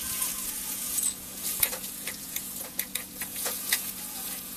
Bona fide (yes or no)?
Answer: no